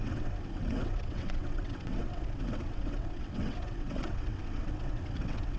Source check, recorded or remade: remade